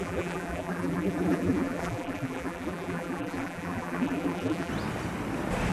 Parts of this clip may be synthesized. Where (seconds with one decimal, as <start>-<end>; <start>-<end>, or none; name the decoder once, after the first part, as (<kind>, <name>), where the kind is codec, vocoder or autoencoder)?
0.0-4.7 (vocoder, BigVGAN v2)